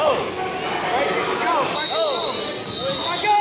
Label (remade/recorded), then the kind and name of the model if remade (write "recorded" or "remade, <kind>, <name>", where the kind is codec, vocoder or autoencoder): recorded